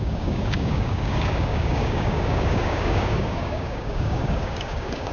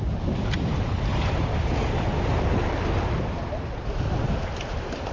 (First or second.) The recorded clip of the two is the second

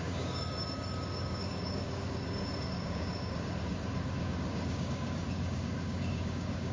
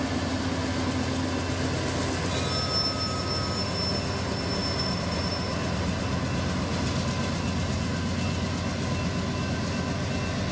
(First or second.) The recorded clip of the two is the second